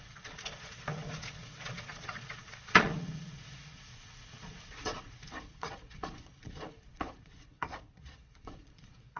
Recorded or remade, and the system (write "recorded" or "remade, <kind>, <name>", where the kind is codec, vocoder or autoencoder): remade, vocoder, Vocos